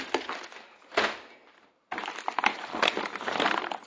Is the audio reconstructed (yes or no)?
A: no